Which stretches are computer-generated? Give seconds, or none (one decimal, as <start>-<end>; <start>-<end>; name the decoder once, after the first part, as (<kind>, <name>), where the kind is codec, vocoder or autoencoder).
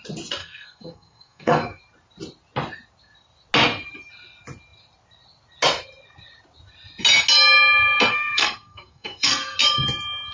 0.4-1.8 (codec, SNAC); 8.1-9.6